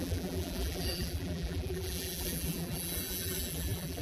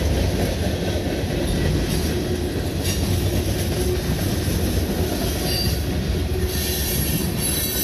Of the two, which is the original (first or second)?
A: second